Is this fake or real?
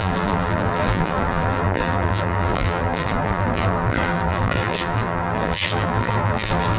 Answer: fake